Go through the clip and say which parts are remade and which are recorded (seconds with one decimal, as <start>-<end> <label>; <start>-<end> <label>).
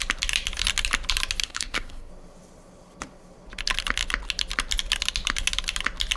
0.0-1.4 recorded; 1.4-2.1 remade; 2.1-6.2 recorded